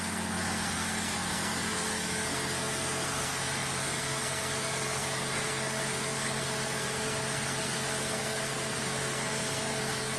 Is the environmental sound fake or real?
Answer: fake